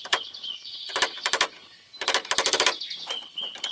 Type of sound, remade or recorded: recorded